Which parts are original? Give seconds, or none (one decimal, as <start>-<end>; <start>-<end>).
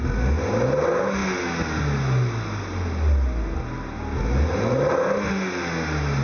0.0-6.2